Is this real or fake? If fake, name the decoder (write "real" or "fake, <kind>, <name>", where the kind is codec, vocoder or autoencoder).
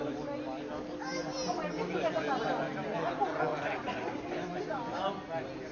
real